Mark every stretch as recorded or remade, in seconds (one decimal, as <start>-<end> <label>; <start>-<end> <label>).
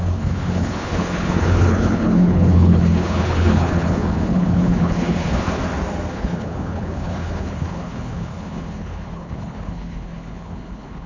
0.0-5.6 remade; 5.6-6.1 recorded; 6.1-11.1 remade